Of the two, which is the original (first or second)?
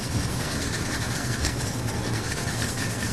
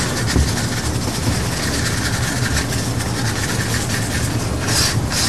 second